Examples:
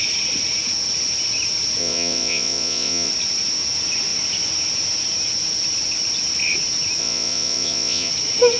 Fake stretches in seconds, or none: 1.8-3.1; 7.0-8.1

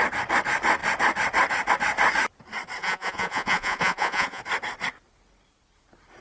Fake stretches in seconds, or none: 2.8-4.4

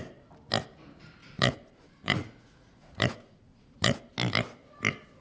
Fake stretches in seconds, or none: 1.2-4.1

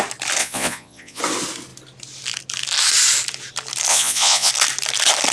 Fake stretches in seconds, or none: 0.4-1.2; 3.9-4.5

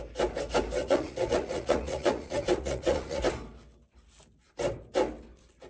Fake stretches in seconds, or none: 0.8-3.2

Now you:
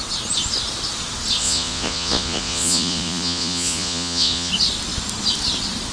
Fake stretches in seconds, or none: 1.4-4.5